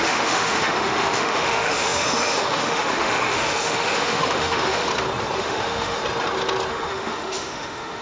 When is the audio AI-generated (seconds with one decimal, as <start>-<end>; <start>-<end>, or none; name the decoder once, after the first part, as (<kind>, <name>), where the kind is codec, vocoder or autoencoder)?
0.0-4.9 (autoencoder, DAC-VAE); 5.4-6.0; 6.7-8.0